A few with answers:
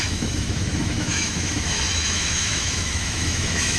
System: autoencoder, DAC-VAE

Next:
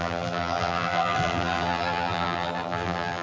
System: vocoder, BigVGAN v2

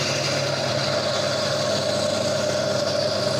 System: none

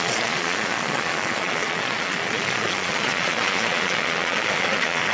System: vocoder, Vocos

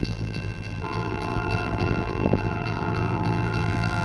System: vocoder, BigVGAN v2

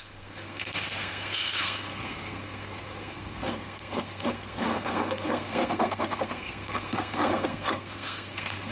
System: codec, SNAC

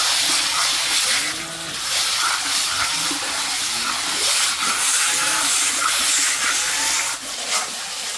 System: none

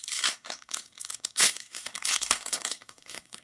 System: codec, SNAC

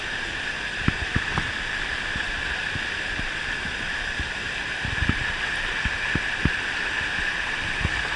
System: none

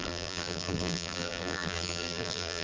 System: vocoder, BigVGAN v2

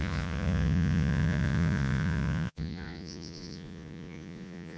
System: vocoder, Vocos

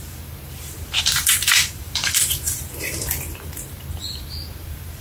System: vocoder, BigVGAN v2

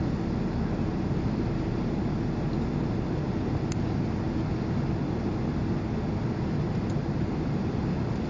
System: none